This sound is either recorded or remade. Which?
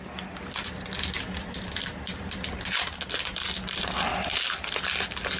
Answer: recorded